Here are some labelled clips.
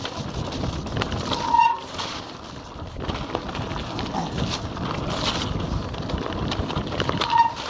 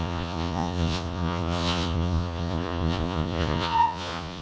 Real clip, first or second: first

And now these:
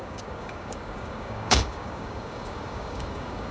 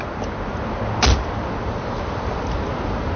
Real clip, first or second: second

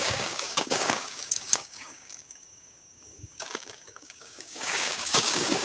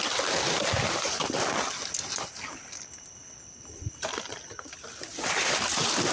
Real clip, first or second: second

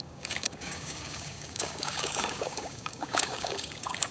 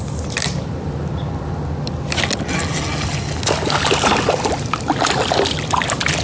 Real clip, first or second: second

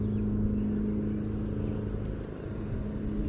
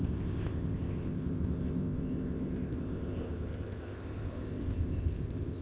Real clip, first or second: first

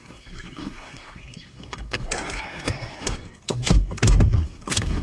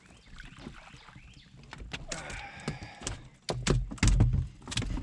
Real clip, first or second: second